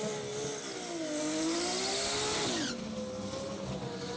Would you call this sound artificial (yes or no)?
no